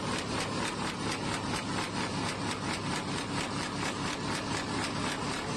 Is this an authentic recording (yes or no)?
yes